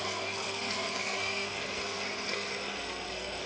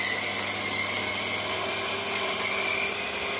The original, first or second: second